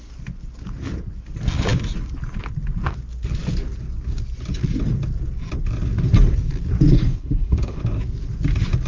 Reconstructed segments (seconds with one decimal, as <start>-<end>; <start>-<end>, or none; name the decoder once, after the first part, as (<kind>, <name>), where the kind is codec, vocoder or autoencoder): 6.9-7.8 (codec, HILCodec)